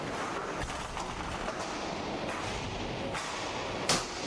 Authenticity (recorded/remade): recorded